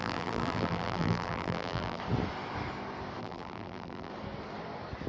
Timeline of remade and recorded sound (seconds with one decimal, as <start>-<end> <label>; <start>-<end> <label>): 0.0-2.0 remade; 2.0-3.2 recorded; 3.2-4.1 remade; 4.1-5.1 recorded